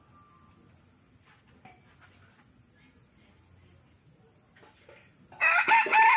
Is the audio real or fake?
real